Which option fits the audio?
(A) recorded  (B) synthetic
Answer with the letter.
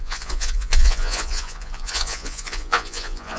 B